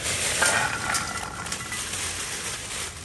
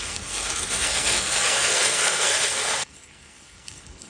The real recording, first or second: first